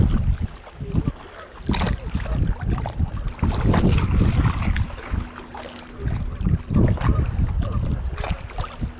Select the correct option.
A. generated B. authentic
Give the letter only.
B